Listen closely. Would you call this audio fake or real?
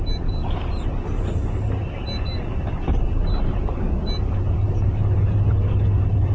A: real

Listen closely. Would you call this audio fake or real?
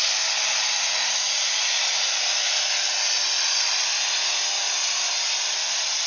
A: real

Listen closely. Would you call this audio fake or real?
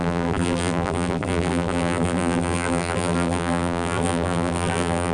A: fake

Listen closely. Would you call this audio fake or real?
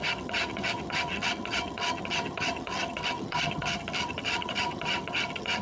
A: fake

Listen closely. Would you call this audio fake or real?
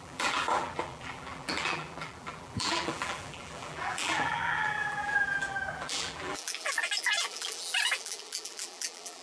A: fake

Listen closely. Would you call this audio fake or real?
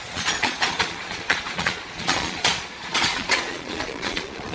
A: fake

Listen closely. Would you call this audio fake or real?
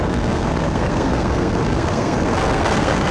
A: fake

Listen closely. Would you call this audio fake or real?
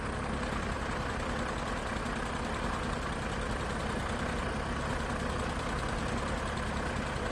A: real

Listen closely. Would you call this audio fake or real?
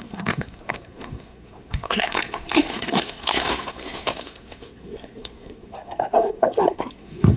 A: fake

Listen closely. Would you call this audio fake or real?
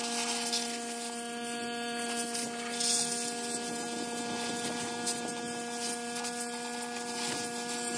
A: real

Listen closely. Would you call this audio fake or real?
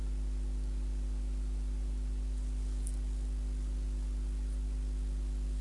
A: real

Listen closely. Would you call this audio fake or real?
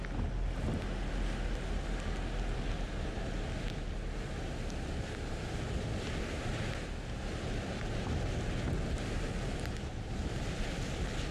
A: real